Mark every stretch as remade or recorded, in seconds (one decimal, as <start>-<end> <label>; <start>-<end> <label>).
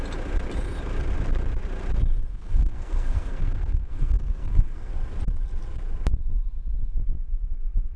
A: 0.0-2.3 recorded; 2.3-4.9 remade; 4.9-8.0 recorded